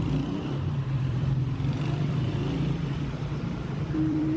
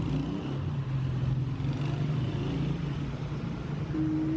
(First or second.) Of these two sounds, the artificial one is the first